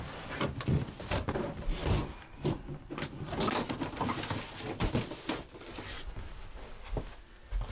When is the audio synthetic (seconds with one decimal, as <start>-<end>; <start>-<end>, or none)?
none